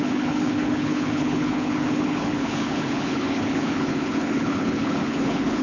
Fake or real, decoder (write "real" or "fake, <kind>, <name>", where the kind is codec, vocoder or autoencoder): fake, codec, HILCodec